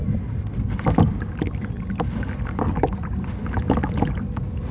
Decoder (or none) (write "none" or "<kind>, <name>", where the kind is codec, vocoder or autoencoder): none